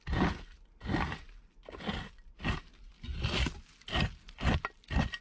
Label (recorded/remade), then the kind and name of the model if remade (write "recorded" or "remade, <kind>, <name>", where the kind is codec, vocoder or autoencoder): recorded